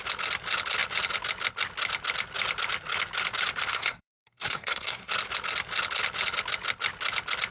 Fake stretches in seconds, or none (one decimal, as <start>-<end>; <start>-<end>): 3.7-5.1

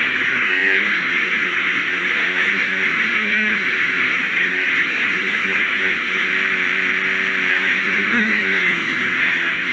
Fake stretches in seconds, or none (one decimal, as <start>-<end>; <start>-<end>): 0.0-6.3; 7.5-9.7

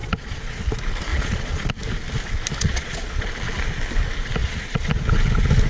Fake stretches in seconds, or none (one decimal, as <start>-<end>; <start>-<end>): 0.0-0.6; 1.1-1.7; 2.6-3.3; 4.4-5.0